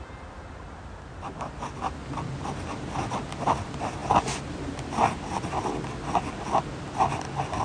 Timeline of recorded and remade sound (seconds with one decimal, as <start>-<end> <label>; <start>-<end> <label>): 0.0-7.6 recorded